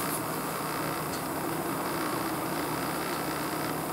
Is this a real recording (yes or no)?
yes